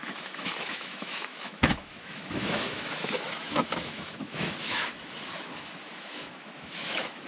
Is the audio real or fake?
fake